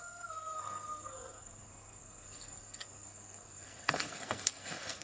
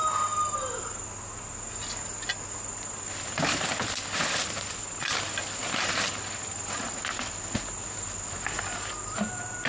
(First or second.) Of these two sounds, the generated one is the first